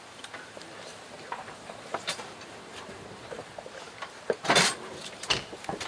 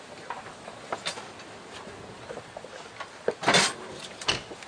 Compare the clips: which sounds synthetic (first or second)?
first